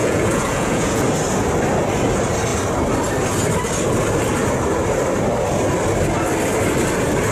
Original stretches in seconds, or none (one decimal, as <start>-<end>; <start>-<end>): 1.0-7.3